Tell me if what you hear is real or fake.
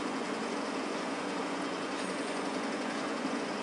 fake